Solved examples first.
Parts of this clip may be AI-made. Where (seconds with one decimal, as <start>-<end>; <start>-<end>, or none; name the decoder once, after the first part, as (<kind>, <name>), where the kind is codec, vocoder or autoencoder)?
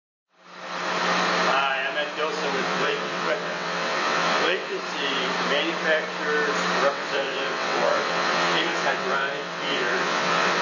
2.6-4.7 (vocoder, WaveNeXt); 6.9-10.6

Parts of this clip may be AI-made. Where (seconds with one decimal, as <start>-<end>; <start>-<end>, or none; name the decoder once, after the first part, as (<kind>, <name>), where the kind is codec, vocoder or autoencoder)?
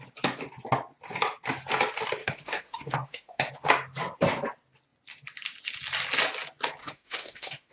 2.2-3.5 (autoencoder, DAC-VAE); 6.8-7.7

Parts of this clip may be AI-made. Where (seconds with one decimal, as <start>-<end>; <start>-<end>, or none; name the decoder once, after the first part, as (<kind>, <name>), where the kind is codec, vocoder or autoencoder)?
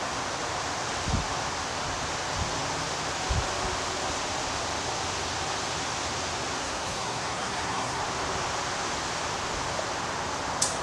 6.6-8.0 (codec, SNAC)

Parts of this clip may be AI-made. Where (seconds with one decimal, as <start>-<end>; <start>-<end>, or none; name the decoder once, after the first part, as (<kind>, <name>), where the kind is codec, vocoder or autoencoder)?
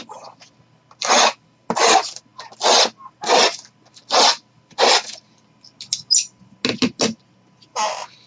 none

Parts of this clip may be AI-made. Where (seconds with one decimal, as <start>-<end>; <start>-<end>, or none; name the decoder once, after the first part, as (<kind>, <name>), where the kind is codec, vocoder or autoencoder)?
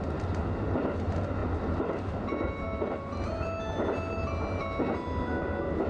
none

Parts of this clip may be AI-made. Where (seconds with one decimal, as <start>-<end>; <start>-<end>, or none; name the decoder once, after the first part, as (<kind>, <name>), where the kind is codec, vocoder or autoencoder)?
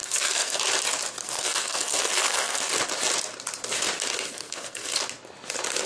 0.0-0.6 (codec, SNAC); 1.2-2.6; 4.3-4.9